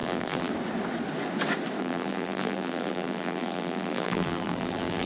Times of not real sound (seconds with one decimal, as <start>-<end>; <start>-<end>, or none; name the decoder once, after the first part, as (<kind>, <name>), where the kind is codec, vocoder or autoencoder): 0.0-0.5 (vocoder, BigVGAN v2); 1.8-5.1